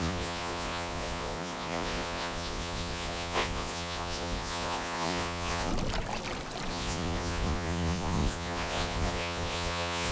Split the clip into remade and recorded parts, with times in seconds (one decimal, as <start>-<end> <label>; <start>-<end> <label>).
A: 0.0-5.7 remade; 5.7-6.7 recorded; 6.7-10.1 remade